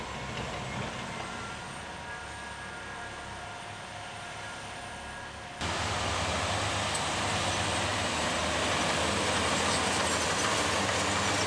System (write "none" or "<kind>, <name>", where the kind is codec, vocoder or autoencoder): none